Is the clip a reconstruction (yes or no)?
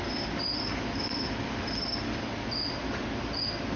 no